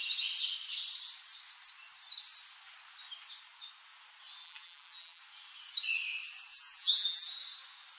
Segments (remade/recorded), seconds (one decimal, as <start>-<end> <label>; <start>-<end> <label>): 0.0-4.4 recorded; 4.4-5.2 remade; 5.2-6.5 recorded; 6.5-7.3 remade; 7.3-8.0 recorded

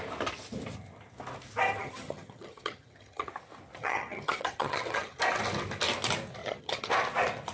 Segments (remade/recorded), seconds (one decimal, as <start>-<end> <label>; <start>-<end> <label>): 0.0-1.8 recorded; 1.8-3.3 remade; 3.3-3.8 recorded; 3.8-5.2 remade; 5.2-6.4 recorded; 6.4-6.9 remade; 6.9-7.5 recorded

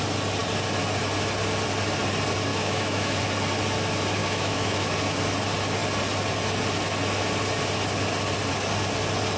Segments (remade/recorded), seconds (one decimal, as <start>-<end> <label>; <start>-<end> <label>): 0.0-2.5 recorded; 2.5-3.2 remade; 3.2-4.2 recorded; 4.2-4.9 remade; 4.9-9.4 recorded

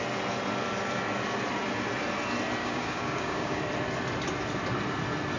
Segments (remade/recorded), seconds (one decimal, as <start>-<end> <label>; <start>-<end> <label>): 0.0-2.6 recorded; 2.6-3.6 remade; 3.6-5.4 recorded

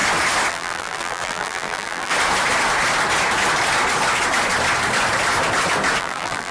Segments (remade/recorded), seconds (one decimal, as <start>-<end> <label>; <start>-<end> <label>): 0.0-0.5 recorded; 0.5-2.1 remade; 2.1-6.0 recorded; 6.0-6.5 remade